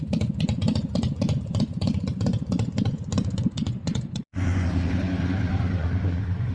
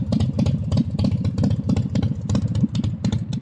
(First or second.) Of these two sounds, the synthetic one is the first